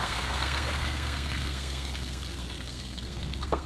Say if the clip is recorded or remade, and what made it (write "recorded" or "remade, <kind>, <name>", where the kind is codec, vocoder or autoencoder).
remade, codec, SNAC